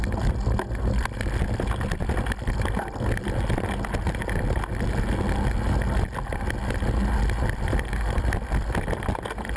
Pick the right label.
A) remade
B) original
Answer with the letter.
B